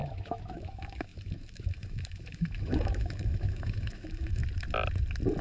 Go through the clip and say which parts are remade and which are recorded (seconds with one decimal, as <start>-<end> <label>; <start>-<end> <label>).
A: 0.0-4.4 remade; 4.4-5.4 recorded